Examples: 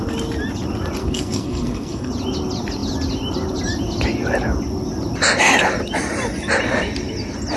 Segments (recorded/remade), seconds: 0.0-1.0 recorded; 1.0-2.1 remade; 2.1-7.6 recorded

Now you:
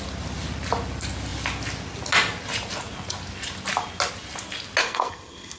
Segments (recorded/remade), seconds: 0.0-4.8 recorded; 4.8-5.6 remade

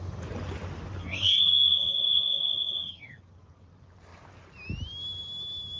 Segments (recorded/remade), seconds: 0.0-1.0 recorded; 1.0-3.2 remade; 3.2-5.8 recorded

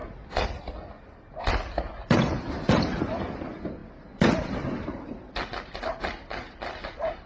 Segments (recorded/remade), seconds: 0.0-7.3 recorded

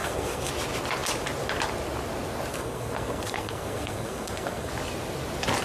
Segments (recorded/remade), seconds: 0.0-0.5 remade; 0.5-2.5 recorded; 2.5-4.7 remade; 4.7-5.6 recorded

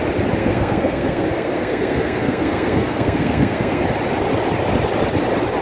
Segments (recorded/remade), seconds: 0.0-0.4 recorded; 0.4-3.8 remade; 3.8-5.6 recorded

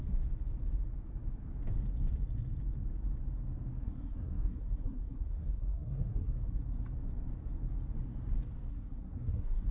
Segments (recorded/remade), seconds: 0.0-3.8 recorded; 3.8-6.6 remade; 6.6-8.7 recorded; 8.7-9.7 remade